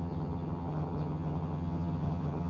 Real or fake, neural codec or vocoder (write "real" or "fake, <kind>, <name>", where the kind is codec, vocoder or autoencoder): fake, vocoder, HiFi-GAN